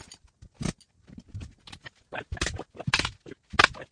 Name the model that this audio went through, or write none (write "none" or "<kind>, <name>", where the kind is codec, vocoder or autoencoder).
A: none